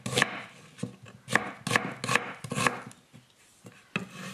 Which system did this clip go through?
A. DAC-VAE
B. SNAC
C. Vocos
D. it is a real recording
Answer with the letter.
D